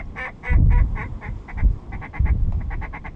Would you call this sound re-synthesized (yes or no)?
no